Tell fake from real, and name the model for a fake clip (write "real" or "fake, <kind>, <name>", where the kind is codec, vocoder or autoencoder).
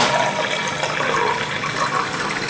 real